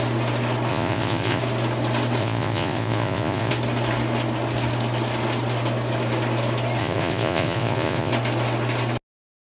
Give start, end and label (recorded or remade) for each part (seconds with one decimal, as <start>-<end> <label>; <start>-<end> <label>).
0.0-0.7 recorded; 0.7-1.4 remade; 1.4-2.2 recorded; 2.2-3.5 remade; 3.5-6.8 recorded; 6.8-8.1 remade; 8.1-9.5 recorded